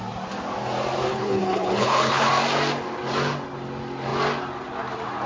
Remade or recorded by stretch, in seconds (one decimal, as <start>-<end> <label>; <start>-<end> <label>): 0.0-1.1 recorded; 1.1-2.3 remade; 2.3-5.3 recorded